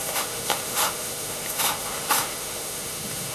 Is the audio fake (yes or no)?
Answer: yes